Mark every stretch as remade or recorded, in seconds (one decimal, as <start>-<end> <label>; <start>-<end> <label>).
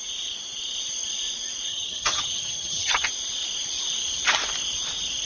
0.0-1.7 recorded; 1.7-3.1 remade; 3.1-5.3 recorded